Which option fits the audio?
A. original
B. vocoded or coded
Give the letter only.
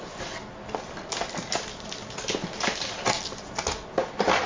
A